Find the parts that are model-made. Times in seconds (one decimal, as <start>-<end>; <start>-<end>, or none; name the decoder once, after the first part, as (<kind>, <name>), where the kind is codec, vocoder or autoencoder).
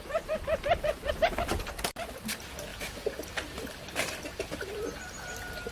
none